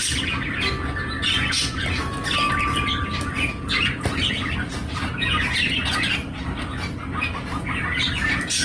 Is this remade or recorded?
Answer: recorded